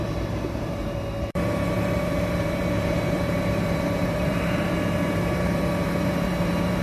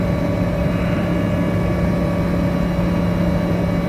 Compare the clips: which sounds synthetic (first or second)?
first